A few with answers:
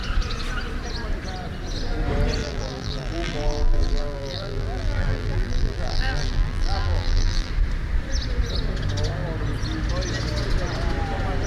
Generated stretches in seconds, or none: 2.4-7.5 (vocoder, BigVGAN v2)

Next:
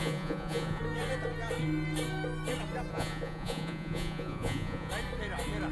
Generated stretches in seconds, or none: 0.0-0.8 (vocoder, Vocos); 2.9-4.9

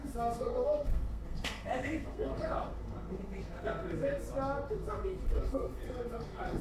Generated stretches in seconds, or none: 0.0-4.2 (codec, SNAC); 4.7-6.6

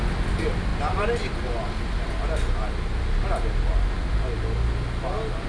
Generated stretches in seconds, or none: none

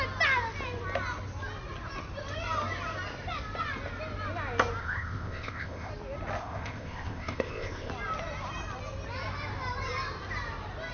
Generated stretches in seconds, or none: 4.8-5.9 (codec, ZipCodec); 6.4-7.9

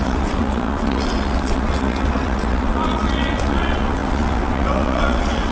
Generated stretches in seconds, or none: 0.0-5.5 (vocoder, WaveNeXt)